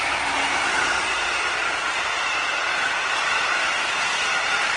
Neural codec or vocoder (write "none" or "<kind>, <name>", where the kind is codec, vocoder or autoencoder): none